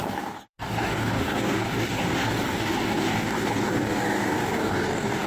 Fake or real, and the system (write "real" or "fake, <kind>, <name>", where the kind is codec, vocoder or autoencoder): fake, codec, DAC